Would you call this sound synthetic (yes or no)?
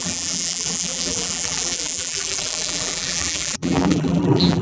yes